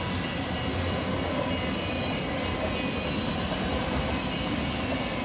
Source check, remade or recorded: recorded